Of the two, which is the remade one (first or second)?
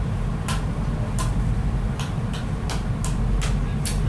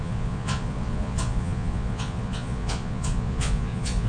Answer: second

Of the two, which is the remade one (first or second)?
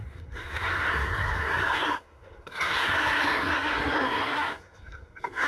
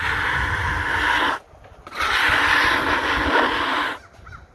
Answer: first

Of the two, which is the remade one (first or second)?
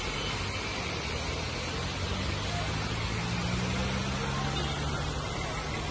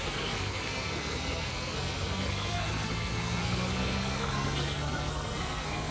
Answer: second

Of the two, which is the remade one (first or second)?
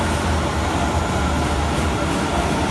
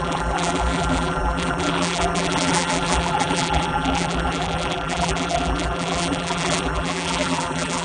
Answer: second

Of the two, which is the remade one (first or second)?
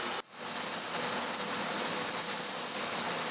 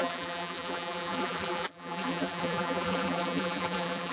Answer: second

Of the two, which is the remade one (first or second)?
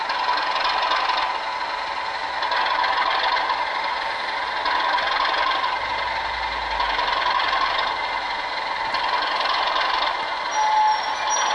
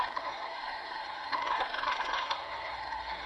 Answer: second